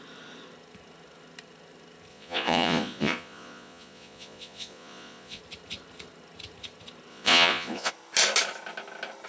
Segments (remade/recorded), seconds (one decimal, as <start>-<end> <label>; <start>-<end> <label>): 0.0-2.1 recorded; 2.1-5.4 remade; 5.4-7.1 recorded; 7.1-7.9 remade; 7.9-9.3 recorded